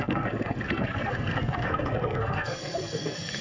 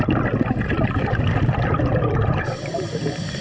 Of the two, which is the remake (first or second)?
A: first